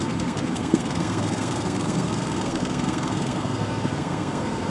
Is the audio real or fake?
fake